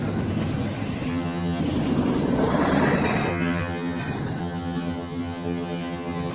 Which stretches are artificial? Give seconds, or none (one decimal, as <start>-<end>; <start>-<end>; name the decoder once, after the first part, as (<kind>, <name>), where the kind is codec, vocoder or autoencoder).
1.1-1.6 (vocoder, HiFi-GAN); 3.3-4.0; 4.4-6.3